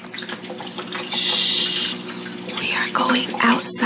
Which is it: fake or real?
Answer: real